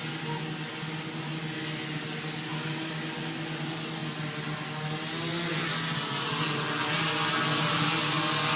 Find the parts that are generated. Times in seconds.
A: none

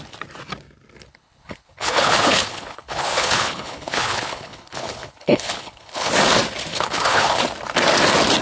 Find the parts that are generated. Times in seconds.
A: 1.1-6.1; 6.7-7.4

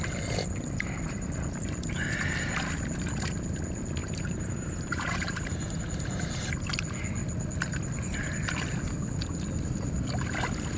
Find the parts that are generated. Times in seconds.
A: 4.0-5.8

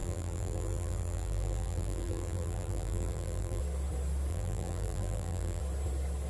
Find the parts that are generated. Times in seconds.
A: 0.0-3.6; 4.3-5.6

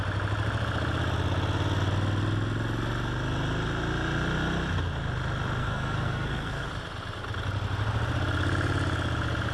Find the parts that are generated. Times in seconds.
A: 5.6-6.7

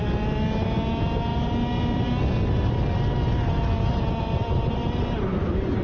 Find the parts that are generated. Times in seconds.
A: none

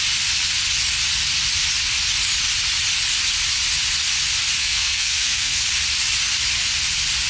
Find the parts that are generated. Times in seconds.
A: 4.6-5.6

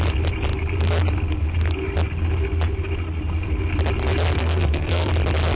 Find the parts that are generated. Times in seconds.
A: 4.4-5.1